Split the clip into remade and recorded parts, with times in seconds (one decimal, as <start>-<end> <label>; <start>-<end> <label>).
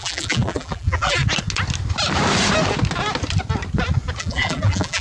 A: 0.0-1.2 remade; 1.2-4.2 recorded; 4.2-5.0 remade